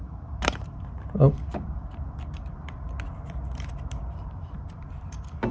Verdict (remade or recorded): remade